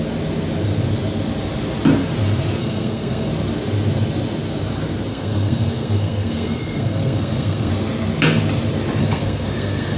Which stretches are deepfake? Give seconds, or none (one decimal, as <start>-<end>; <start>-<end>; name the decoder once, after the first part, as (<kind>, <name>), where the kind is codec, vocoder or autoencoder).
2.6-3.3 (codec, SNAC); 5.1-7.7; 9.0-10.0